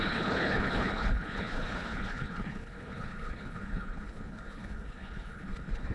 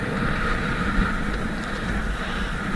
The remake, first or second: first